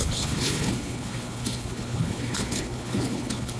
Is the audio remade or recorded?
remade